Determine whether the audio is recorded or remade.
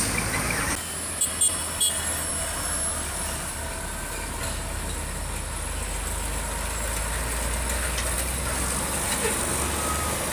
recorded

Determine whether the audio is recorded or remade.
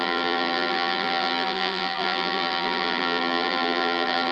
remade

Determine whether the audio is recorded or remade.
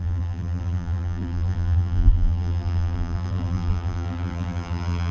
remade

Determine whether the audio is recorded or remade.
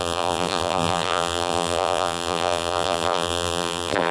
remade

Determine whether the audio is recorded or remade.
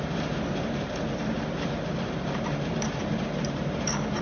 remade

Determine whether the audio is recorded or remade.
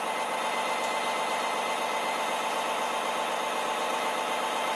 remade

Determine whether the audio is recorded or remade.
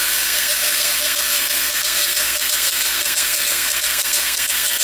remade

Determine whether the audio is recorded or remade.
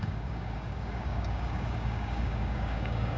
remade